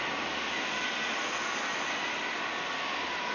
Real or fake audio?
real